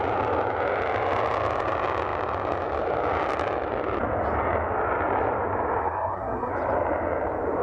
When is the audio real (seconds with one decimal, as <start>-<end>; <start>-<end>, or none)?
0.0-5.8; 6.5-7.6